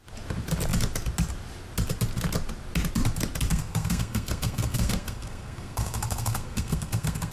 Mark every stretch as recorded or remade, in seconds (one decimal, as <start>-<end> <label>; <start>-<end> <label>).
0.0-3.5 recorded; 3.5-7.3 remade